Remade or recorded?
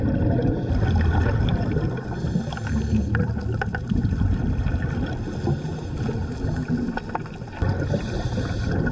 recorded